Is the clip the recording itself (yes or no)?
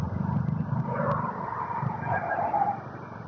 no